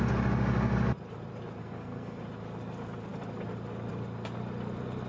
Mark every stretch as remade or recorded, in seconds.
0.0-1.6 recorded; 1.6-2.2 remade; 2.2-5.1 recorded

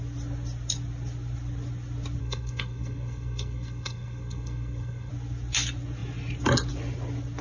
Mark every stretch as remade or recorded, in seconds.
0.0-2.2 recorded; 2.2-5.1 remade; 5.1-7.4 recorded

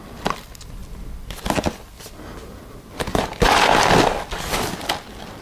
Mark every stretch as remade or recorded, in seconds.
0.0-5.4 recorded

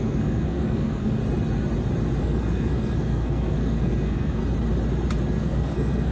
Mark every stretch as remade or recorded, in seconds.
0.0-1.2 remade; 1.2-2.2 recorded; 2.2-4.4 remade; 4.4-5.4 recorded; 5.4-6.1 remade

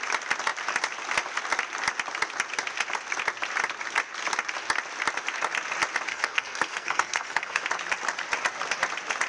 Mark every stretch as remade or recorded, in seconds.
0.0-6.1 recorded; 6.1-7.6 remade; 7.6-9.3 recorded

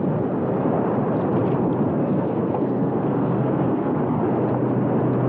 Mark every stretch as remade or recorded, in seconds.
0.0-2.0 recorded; 2.0-4.0 remade; 4.0-5.3 recorded

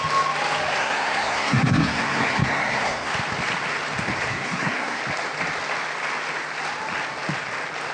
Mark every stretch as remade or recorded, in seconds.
0.0-0.8 recorded; 0.8-3.1 remade; 3.1-4.3 recorded; 4.3-5.0 remade; 5.0-7.9 recorded

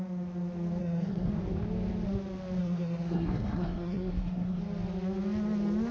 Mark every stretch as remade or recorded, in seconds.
0.0-0.8 recorded; 0.8-1.3 remade; 1.3-2.6 recorded; 2.6-4.6 remade; 4.6-5.9 recorded